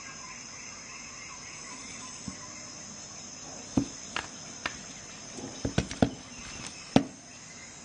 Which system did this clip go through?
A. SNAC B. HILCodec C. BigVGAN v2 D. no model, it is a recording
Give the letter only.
D